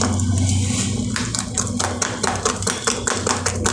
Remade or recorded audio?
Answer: recorded